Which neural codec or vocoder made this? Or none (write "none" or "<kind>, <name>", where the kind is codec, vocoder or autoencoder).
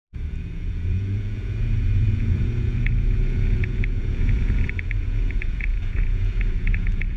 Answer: vocoder, Vocos